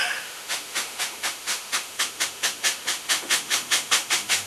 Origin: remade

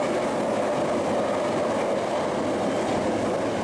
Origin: recorded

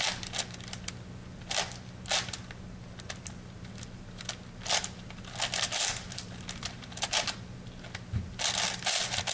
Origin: recorded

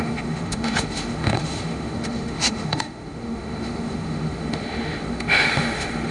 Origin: remade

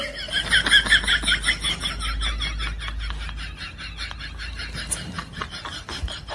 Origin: recorded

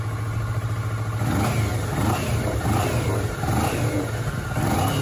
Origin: recorded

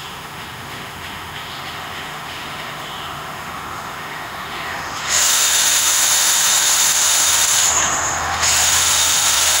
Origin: remade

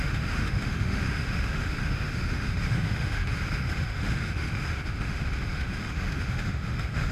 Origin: remade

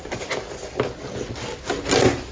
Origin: recorded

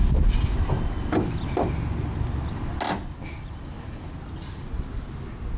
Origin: recorded